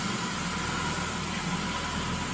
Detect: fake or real real